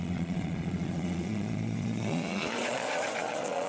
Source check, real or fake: fake